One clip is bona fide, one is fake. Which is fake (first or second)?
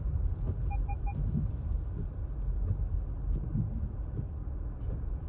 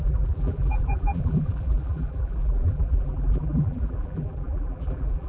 second